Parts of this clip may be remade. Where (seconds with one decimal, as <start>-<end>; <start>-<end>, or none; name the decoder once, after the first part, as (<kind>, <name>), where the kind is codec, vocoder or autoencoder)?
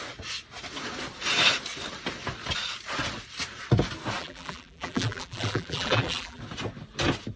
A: 4.2-6.4 (vocoder, BigVGAN v2)